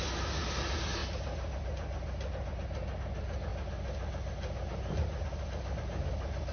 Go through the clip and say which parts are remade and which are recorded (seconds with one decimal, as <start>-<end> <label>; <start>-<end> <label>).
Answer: 0.0-6.5 recorded